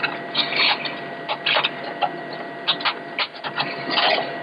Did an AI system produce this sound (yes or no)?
no